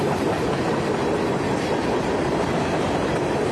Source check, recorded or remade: recorded